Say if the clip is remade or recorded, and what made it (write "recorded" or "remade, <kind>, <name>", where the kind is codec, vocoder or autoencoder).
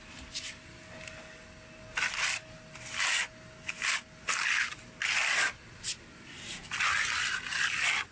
recorded